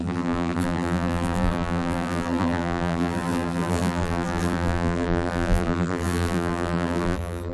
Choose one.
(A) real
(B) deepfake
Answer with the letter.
B